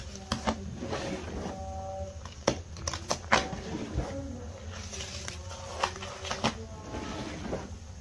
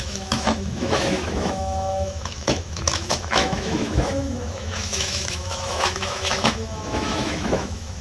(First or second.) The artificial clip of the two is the second